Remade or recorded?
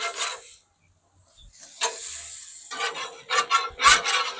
recorded